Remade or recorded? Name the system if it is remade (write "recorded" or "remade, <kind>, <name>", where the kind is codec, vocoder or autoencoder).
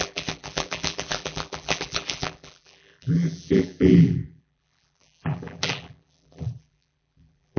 remade, vocoder, BigVGAN v2